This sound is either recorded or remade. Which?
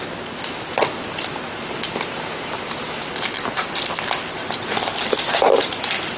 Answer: recorded